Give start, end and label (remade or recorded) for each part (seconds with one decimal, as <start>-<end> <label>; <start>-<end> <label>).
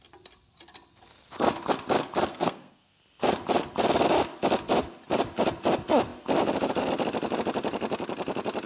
0.0-2.3 recorded; 2.3-3.0 remade; 3.0-8.7 recorded